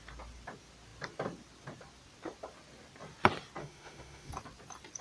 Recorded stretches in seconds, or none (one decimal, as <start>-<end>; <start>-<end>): 0.0-3.6; 4.3-5.0